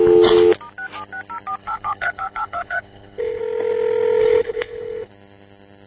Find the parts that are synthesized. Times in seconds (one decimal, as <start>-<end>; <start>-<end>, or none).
1.6-3.4; 4.2-5.1